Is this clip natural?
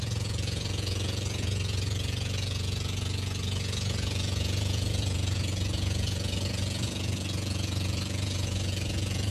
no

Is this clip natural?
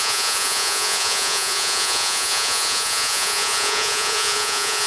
no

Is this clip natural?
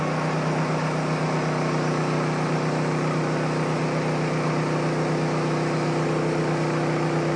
yes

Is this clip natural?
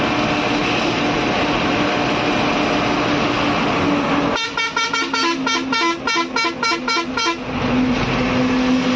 yes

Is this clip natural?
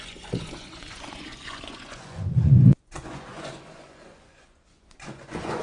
no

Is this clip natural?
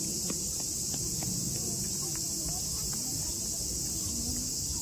yes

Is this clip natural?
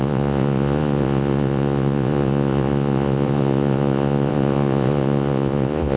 no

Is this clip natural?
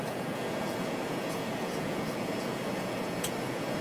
no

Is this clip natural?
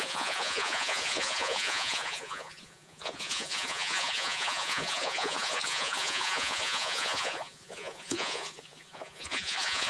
no